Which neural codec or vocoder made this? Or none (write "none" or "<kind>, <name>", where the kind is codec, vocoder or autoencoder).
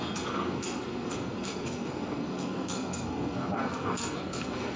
codec, SNAC